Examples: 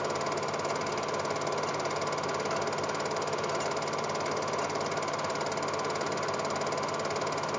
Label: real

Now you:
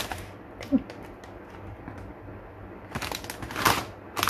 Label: real